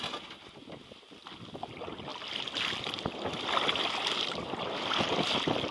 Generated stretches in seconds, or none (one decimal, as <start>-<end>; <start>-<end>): none